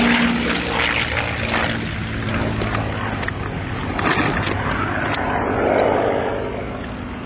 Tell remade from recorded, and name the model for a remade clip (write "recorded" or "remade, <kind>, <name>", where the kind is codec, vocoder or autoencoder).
recorded